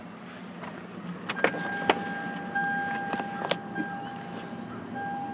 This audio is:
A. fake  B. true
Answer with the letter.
B